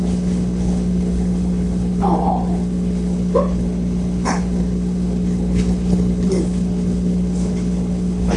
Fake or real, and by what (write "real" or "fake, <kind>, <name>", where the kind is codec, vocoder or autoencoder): fake, codec, HILCodec